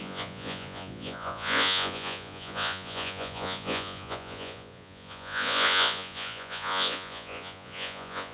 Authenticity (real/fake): fake